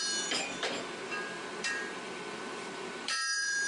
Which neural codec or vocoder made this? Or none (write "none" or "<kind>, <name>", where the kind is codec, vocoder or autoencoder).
vocoder, BigVGAN v2